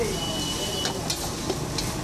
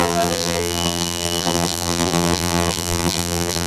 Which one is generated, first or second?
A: second